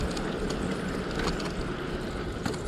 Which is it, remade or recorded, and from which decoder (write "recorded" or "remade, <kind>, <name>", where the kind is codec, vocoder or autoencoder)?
recorded